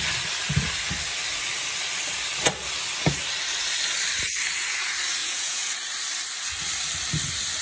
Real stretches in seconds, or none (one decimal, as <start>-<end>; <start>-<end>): 0.0-5.2; 5.7-7.6